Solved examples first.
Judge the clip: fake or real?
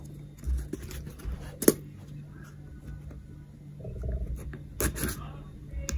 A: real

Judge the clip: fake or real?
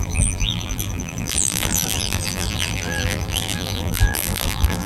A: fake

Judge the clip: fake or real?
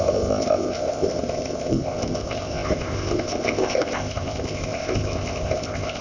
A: fake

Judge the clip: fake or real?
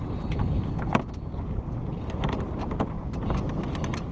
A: real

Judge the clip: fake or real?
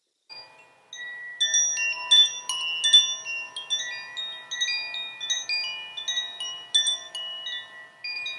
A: real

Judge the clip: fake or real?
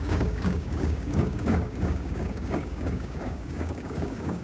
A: fake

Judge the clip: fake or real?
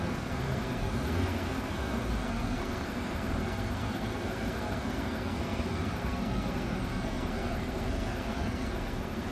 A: fake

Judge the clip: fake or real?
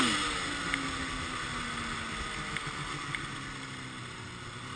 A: real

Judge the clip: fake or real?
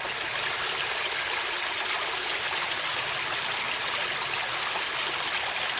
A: real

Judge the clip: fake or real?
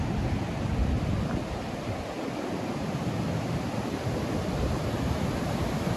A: real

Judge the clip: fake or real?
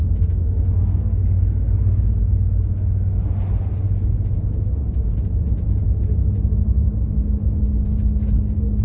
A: real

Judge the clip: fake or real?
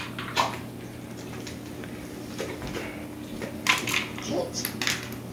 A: real